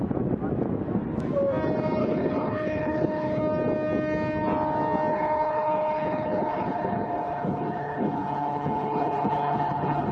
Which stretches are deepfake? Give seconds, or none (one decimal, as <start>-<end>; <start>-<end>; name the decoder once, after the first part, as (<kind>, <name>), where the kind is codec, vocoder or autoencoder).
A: 2.0-3.4 (codec, HILCodec); 5.1-10.1